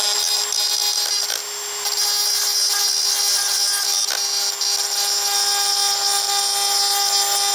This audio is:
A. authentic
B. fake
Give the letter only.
A